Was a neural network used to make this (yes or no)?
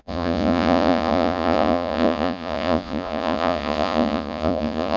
yes